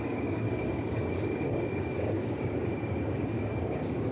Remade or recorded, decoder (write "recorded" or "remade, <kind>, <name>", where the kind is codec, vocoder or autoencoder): remade, codec, DAC